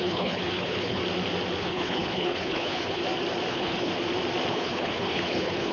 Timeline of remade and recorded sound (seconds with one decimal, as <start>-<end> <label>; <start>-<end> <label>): 0.0-1.0 remade; 1.0-1.6 recorded; 1.6-3.0 remade; 3.0-3.5 recorded; 3.5-3.9 remade; 3.9-4.5 recorded; 4.5-5.7 remade